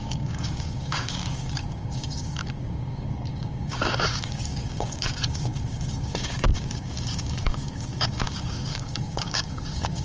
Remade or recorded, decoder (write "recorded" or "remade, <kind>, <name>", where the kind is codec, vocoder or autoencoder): remade, codec, DAC